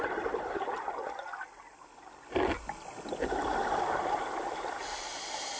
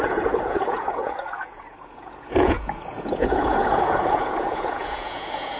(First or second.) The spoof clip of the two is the second